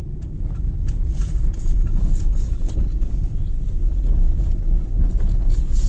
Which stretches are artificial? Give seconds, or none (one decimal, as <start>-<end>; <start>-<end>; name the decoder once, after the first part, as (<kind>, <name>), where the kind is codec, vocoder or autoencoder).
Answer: 0.0-1.4 (vocoder, Vocos); 3.8-5.9